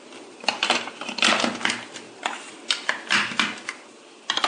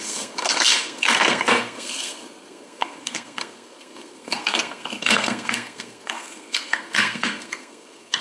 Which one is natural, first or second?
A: first